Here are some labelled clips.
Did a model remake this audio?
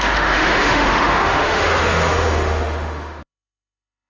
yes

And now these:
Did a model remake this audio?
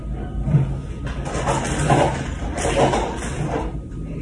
no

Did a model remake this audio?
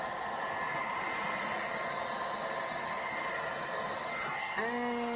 no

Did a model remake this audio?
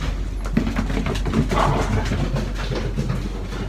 no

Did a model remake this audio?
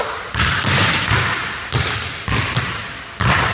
no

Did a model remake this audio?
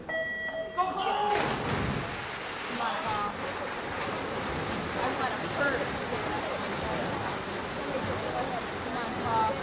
no